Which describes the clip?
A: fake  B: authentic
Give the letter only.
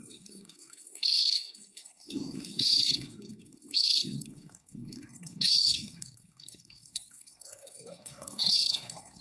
A